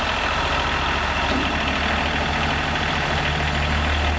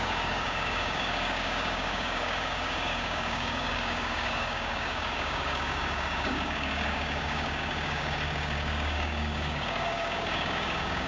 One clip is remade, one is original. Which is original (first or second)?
first